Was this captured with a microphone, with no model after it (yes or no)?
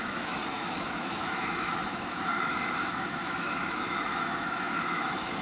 no